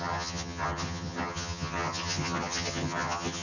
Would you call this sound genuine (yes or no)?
no